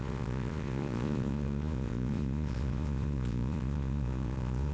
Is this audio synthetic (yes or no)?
yes